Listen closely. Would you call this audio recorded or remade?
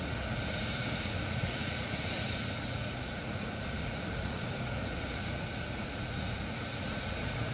remade